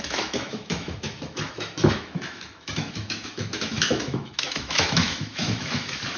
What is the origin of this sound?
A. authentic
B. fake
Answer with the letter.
B